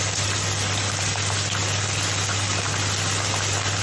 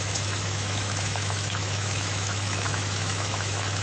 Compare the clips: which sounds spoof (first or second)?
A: second